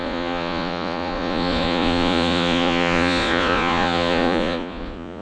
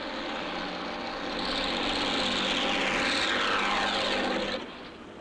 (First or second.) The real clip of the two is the second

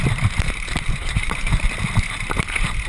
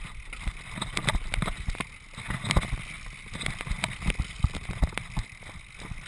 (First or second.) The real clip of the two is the second